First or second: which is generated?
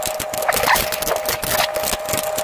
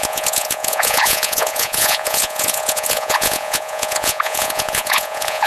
second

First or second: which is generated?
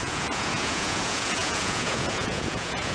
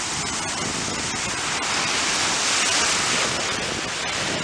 first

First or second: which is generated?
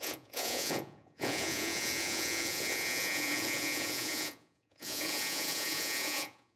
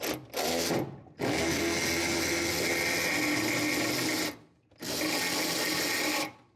first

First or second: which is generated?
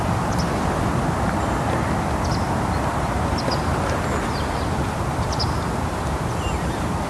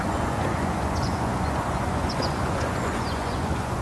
second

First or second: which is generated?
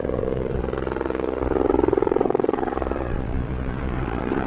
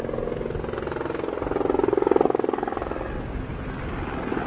first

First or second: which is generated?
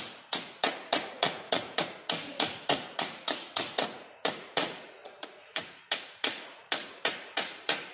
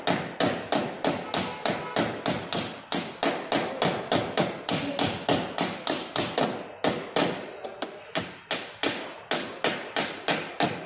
first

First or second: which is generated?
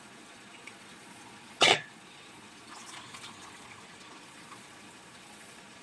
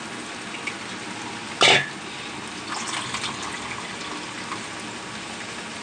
first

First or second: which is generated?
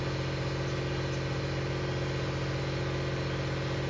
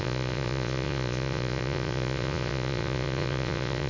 second